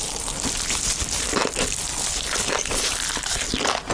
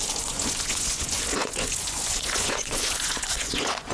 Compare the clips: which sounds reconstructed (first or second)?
second